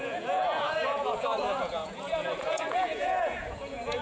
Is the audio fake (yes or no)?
yes